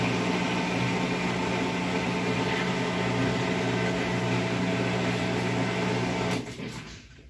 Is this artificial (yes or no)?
no